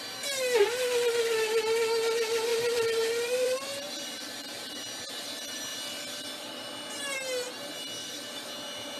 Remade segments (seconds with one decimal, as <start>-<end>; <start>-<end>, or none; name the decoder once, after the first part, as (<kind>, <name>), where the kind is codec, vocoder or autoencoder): 2.5-4.7 (vocoder, BigVGAN v2); 5.7-6.8; 8.0-9.0